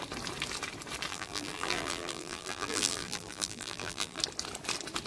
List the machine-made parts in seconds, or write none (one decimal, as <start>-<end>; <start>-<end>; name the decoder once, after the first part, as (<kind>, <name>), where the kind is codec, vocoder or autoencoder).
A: 1.1-4.2 (vocoder, BigVGAN v2)